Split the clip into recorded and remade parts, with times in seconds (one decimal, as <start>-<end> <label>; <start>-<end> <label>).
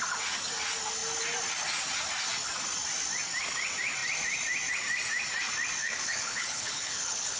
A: 0.0-5.8 recorded; 5.8-7.4 remade